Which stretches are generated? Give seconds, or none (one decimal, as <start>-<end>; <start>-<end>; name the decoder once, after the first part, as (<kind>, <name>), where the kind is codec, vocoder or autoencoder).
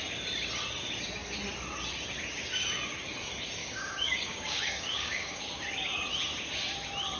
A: 3.6-5.4 (codec, DAC)